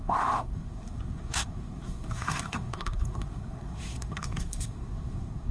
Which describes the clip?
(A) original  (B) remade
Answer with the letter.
B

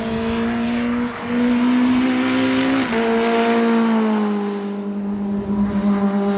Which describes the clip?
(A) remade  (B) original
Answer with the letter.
B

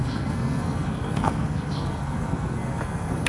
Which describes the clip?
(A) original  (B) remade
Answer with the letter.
B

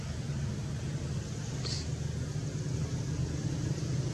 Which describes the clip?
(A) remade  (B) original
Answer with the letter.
B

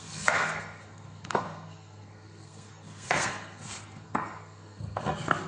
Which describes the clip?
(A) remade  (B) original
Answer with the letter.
A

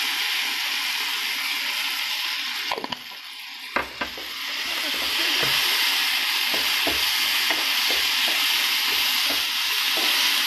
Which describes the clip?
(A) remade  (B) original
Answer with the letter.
B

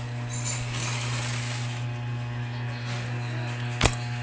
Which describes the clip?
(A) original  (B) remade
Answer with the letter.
A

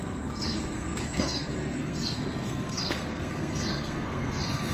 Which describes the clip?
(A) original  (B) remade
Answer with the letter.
B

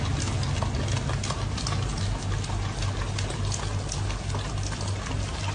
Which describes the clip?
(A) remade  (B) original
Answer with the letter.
B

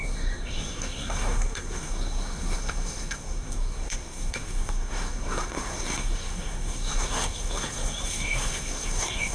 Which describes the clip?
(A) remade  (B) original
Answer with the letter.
A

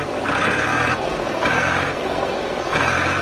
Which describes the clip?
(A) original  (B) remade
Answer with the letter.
B